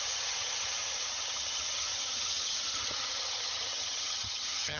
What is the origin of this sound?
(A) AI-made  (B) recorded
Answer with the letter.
A